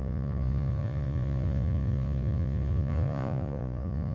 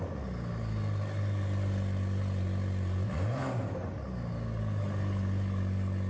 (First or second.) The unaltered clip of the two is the second